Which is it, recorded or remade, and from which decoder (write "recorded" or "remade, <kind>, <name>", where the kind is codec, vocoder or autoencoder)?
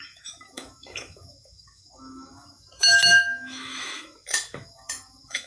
remade, autoencoder, DAC-VAE